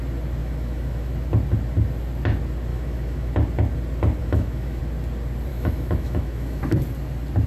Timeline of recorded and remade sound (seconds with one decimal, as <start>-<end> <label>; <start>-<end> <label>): 0.0-0.4 recorded; 0.4-1.1 remade; 1.1-2.7 recorded; 2.7-3.3 remade; 3.3-4.2 recorded; 4.2-4.8 remade; 4.8-5.5 recorded; 5.5-6.6 remade; 6.6-7.5 recorded